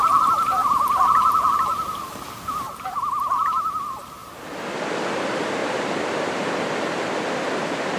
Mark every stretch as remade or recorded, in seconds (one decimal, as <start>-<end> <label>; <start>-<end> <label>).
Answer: 0.0-5.6 recorded; 5.6-6.5 remade; 6.5-8.0 recorded